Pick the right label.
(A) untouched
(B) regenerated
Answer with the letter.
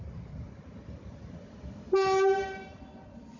A